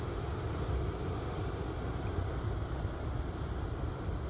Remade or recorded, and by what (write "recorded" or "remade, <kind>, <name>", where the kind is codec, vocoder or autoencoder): recorded